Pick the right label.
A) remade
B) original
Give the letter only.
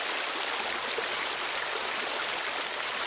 B